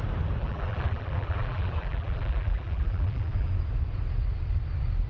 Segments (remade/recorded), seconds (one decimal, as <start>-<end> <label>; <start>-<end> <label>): 0.0-0.4 recorded; 0.4-3.5 remade; 3.5-5.1 recorded